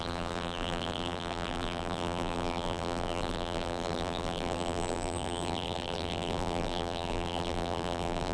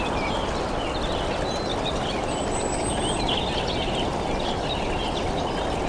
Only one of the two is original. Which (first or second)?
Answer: second